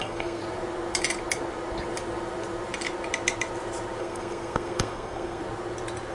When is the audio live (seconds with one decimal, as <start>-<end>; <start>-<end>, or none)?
0.4-4.0; 5.4-6.1